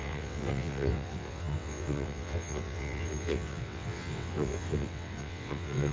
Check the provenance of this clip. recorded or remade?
remade